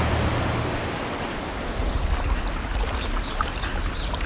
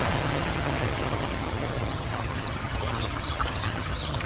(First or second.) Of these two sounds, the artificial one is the second